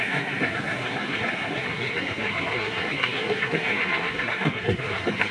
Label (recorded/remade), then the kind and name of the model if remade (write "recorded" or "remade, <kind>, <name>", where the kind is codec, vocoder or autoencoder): remade, codec, SNAC